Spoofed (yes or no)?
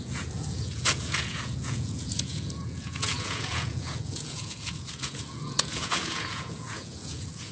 yes